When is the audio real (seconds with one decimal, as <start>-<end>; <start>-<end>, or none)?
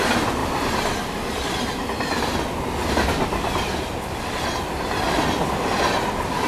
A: 0.0-6.5